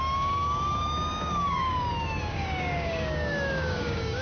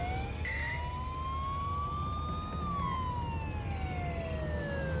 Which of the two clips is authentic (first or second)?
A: second